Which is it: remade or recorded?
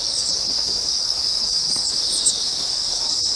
remade